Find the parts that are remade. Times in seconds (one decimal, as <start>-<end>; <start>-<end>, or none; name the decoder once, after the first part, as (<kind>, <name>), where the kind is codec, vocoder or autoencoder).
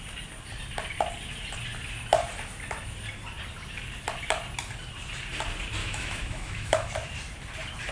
5.8-6.9 (autoencoder, DAC-VAE)